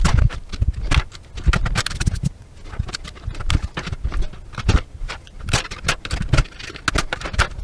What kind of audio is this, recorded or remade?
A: recorded